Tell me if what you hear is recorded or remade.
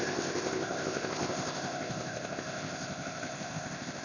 remade